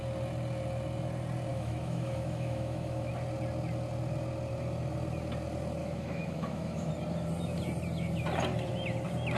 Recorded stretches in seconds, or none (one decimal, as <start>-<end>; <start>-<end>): 0.0-1.5; 3.1-5.8; 6.9-9.4